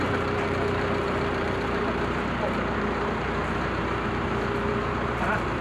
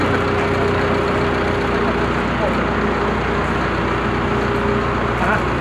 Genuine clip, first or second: second